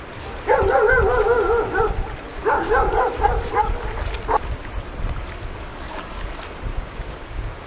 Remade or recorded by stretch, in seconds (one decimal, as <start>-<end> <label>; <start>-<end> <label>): 0.0-2.3 recorded; 2.3-2.9 remade; 2.9-5.7 recorded; 5.7-6.3 remade; 6.3-6.7 recorded; 6.7-7.7 remade